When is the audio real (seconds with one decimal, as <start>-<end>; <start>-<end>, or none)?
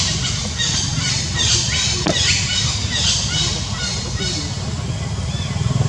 0.0-5.9